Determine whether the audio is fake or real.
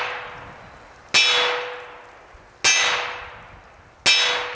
real